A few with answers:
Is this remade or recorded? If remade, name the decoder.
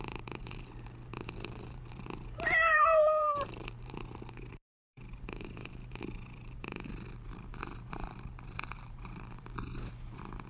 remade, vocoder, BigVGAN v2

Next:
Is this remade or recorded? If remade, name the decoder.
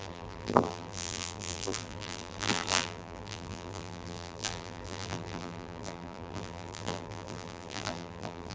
remade, vocoder, BigVGAN v2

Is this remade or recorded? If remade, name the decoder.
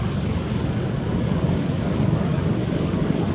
remade, codec, DAC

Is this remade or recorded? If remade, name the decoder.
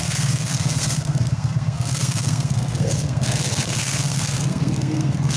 remade, codec, SNAC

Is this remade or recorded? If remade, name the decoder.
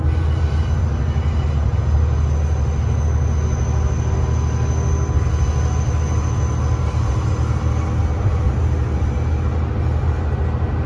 recorded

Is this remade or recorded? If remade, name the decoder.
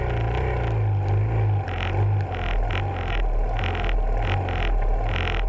recorded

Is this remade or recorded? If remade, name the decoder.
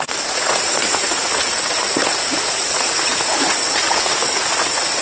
remade, vocoder, Vocos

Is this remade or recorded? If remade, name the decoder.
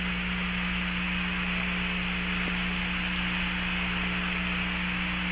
recorded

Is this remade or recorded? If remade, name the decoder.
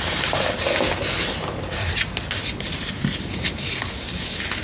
recorded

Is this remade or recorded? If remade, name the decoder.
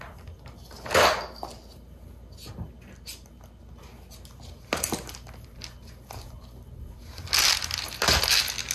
recorded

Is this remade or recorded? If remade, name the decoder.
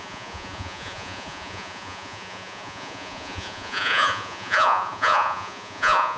remade, vocoder, Vocos